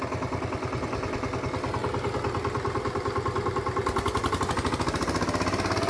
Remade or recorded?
recorded